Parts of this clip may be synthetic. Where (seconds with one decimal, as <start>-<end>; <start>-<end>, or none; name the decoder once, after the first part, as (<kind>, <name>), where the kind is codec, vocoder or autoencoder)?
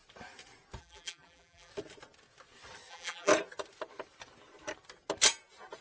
0.8-1.7 (vocoder, BigVGAN v2); 2.9-3.3